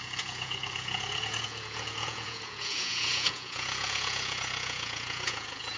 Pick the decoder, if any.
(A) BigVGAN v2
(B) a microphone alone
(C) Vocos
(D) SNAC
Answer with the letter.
C